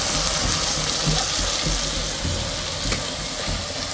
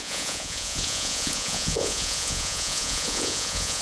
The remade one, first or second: second